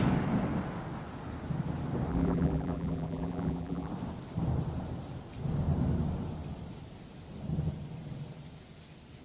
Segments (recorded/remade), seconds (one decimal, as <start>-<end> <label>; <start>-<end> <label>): 0.0-2.1 recorded; 2.1-3.9 remade; 3.9-9.2 recorded